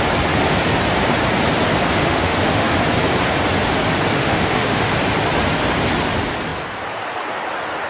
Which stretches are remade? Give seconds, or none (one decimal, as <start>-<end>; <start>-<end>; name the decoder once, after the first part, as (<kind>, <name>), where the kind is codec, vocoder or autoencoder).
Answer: 2.0-2.8 (autoencoder, DAC-VAE); 4.2-4.9